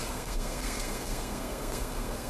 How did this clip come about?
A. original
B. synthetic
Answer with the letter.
B